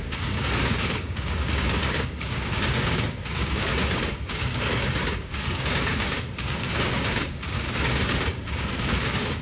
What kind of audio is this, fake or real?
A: fake